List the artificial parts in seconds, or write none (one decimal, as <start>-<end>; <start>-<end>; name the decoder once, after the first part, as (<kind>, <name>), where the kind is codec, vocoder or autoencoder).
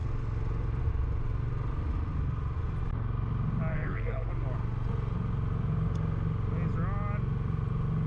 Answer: 3.7-4.3 (codec, SNAC)